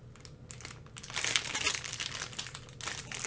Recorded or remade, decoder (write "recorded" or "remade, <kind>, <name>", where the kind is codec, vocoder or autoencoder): recorded